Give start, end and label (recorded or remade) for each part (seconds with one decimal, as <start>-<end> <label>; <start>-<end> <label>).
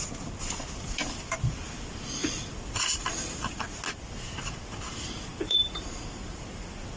0.0-5.3 recorded; 5.3-6.0 remade; 6.0-7.0 recorded